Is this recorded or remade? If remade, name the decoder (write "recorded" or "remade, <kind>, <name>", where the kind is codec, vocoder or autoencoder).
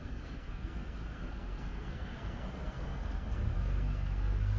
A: remade, codec, SNAC